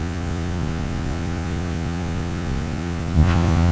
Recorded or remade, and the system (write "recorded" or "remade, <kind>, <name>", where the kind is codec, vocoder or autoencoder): remade, vocoder, Vocos